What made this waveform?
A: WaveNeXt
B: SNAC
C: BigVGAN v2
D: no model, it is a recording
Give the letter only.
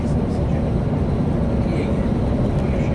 D